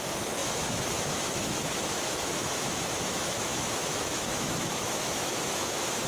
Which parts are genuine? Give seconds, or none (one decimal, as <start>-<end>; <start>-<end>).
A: none